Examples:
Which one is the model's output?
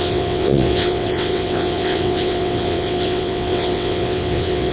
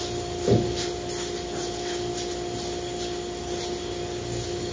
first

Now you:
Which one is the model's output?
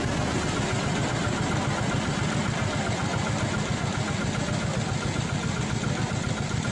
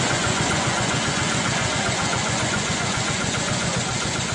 second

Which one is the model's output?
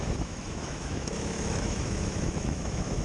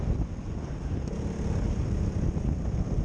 first